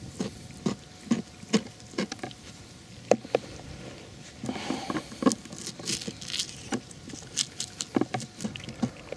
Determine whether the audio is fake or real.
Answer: real